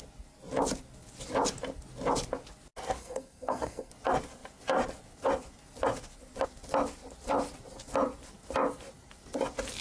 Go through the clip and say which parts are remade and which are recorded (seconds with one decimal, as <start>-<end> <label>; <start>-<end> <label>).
0.0-3.0 recorded; 3.0-3.9 remade; 3.9-9.8 recorded